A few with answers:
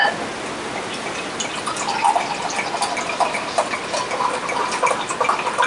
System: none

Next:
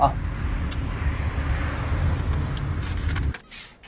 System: none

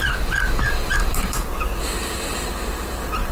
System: none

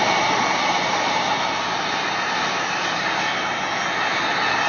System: none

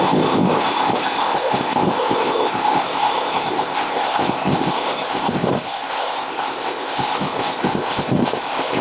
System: codec, ZipCodec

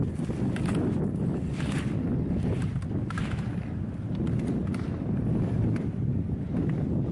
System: none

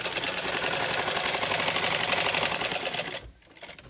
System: none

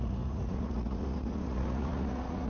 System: vocoder, Vocos